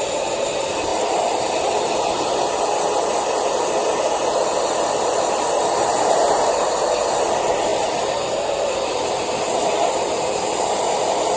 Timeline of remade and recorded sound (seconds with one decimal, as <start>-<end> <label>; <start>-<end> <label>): 0.0-11.4 recorded